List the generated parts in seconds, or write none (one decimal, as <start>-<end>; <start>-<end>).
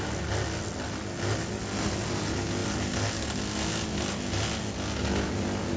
none